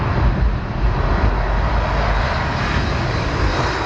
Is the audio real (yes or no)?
yes